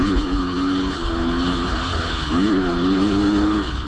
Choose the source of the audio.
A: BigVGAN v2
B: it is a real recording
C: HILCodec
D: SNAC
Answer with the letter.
C